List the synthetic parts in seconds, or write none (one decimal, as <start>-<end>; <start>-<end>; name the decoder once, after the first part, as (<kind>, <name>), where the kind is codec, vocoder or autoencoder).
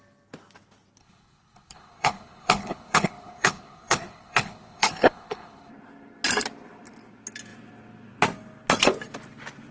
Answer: 1.0-5.7 (codec, HILCodec)